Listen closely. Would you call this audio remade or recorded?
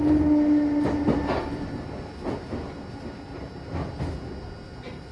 recorded